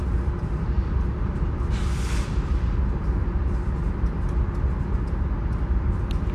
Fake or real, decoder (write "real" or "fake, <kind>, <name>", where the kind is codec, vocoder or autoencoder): real